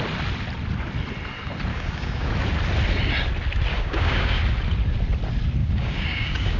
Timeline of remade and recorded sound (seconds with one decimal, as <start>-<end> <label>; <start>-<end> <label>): 0.0-1.7 recorded; 1.7-2.3 remade; 2.3-3.7 recorded; 3.7-4.4 remade; 4.4-5.6 recorded; 5.6-6.6 remade